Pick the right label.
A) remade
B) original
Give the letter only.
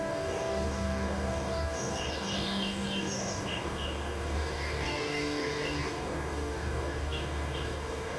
A